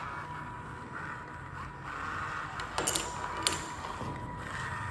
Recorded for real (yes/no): yes